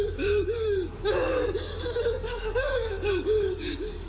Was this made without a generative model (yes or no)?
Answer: no